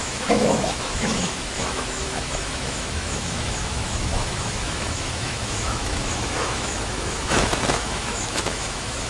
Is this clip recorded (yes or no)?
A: no